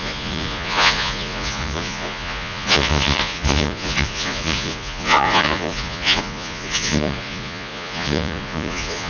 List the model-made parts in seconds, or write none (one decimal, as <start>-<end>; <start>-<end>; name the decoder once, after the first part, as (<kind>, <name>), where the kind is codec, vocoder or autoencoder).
0.0-9.1 (vocoder, Vocos)